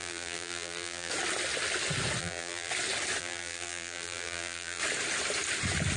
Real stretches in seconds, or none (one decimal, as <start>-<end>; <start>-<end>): 1.1-2.2; 2.7-3.2; 4.8-6.0